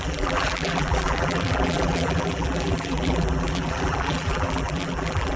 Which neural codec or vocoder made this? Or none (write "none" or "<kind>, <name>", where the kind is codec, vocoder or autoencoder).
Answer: vocoder, BigVGAN v2